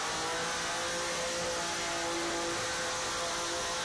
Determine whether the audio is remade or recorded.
recorded